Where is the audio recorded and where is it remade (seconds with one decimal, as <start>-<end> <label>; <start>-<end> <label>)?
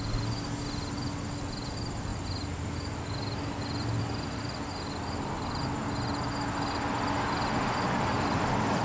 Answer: 0.0-8.8 recorded